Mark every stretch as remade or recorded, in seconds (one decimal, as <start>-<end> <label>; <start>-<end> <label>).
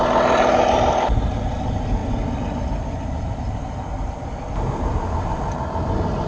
0.0-6.3 recorded